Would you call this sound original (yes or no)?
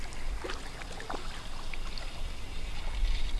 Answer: yes